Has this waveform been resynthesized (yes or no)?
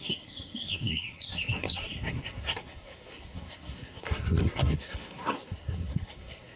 yes